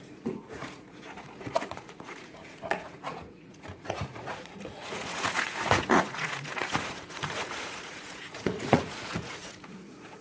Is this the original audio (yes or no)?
no